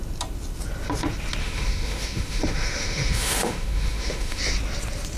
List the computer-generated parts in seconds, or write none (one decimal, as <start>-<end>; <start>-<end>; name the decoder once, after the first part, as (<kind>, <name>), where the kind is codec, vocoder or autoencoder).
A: 1.4-4.4 (autoencoder, DAC-VAE)